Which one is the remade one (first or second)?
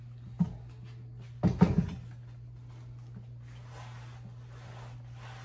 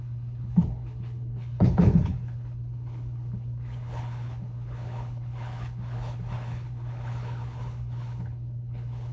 second